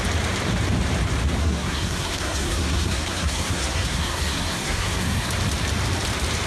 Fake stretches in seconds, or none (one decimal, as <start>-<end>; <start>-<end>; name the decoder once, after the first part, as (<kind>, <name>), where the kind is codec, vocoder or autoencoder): 1.4-5.3 (codec, SNAC)